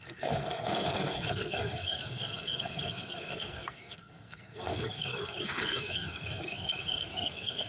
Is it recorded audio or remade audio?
remade